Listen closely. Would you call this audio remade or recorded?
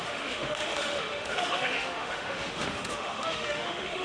remade